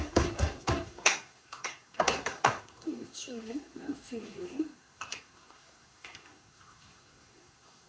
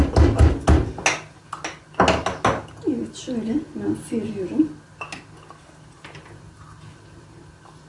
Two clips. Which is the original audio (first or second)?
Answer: second